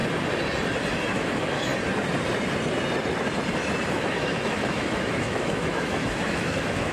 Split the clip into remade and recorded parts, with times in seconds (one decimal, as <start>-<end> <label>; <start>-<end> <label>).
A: 0.0-1.1 recorded; 1.1-1.7 remade; 1.7-3.9 recorded; 3.9-6.9 remade